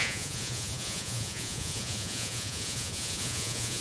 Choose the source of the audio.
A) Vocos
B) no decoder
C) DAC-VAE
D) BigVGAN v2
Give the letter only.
A